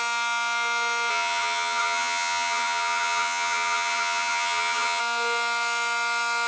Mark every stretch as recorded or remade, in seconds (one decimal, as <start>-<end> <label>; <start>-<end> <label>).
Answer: 0.0-1.1 recorded; 1.1-5.0 remade; 5.0-6.5 recorded